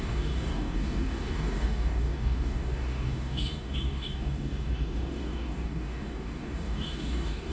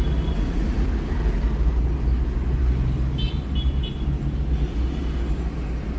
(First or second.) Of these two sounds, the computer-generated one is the first